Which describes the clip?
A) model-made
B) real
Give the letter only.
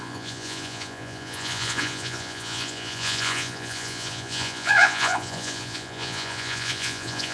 A